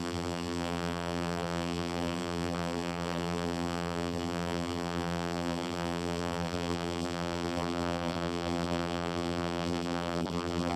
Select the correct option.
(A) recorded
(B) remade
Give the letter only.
B